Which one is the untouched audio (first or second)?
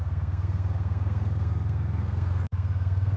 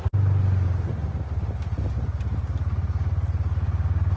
second